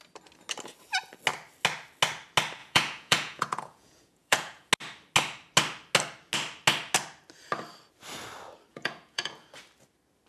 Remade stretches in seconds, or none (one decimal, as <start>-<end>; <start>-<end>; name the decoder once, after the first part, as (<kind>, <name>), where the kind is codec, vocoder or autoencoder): 2.6-4.7 (vocoder, Vocos); 8.7-9.5